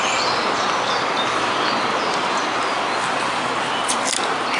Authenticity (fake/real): real